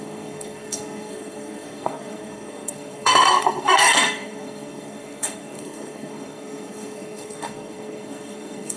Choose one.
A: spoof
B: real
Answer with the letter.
A